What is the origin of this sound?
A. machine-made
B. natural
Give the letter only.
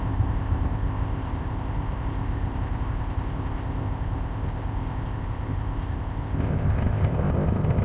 A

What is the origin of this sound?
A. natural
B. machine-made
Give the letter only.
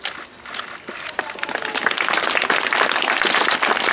A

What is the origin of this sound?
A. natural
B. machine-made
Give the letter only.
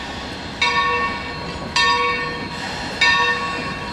A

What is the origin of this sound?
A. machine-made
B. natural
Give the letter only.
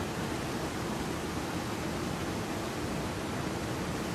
B